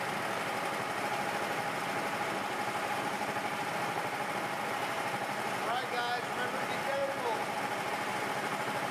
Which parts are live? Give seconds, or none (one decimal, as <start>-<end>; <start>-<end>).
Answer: 0.0-8.9